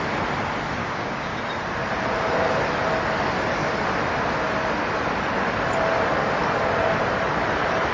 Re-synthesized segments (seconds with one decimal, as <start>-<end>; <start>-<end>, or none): 0.8-1.4

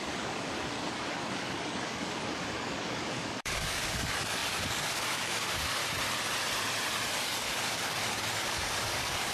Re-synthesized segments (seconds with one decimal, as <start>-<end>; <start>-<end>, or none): 0.0-5.8; 7.2-9.3

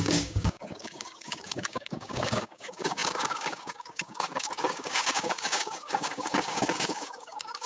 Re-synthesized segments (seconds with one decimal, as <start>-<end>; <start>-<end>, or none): 0.0-7.7

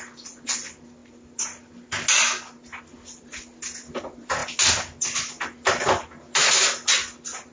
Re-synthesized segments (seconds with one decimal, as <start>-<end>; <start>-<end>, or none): none

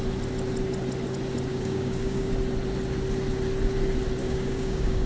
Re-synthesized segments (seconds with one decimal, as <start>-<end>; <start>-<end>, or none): 1.5-2.3; 4.2-5.1

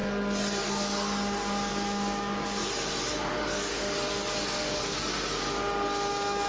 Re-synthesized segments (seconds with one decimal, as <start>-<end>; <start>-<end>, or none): 1.7-2.6; 3.1-5.0; 6.1-6.5

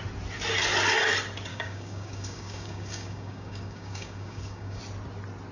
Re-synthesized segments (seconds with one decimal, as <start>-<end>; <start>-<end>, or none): 1.5-4.8